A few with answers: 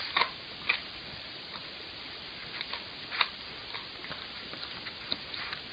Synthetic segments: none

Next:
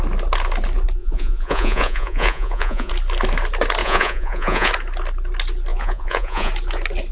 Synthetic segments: 1.0-2.9; 3.8-4.7; 5.7-6.5

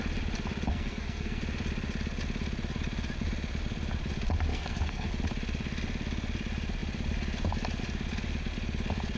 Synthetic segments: 0.7-1.4; 4.5-5.1

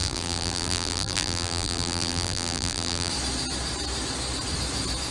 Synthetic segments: 0.0-3.1

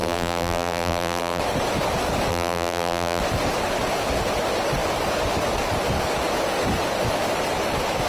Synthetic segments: 0.0-1.4; 2.3-3.2

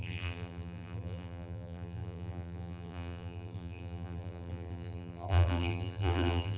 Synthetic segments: 0.0-6.6